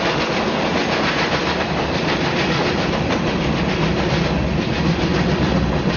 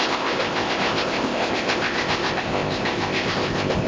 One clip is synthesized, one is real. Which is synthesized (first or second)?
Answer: second